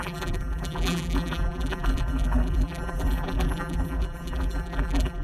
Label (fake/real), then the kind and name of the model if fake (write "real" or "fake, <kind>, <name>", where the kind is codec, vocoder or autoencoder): fake, vocoder, BigVGAN v2